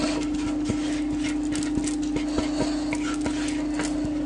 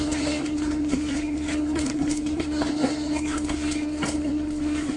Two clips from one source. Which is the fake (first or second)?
second